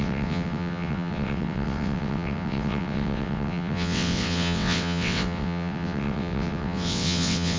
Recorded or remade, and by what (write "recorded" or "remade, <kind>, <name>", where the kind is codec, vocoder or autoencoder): remade, vocoder, WaveNeXt